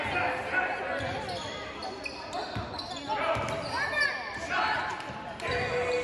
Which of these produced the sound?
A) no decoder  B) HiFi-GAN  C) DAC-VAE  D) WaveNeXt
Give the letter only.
A